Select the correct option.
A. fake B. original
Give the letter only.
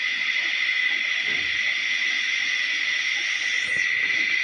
B